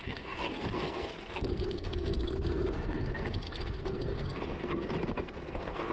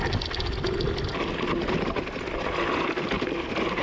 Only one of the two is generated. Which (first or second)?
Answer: first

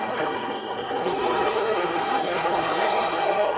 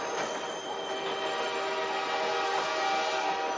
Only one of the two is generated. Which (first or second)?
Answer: first